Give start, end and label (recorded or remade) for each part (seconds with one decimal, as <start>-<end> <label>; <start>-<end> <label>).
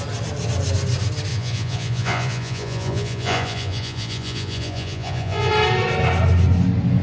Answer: 0.0-1.3 recorded; 1.3-5.5 remade; 5.5-7.0 recorded